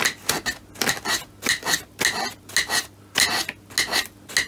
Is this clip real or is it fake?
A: real